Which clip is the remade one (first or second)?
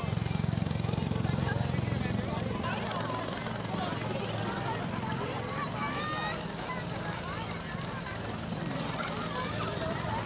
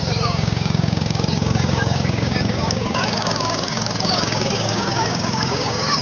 second